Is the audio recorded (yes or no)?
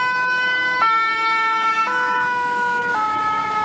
no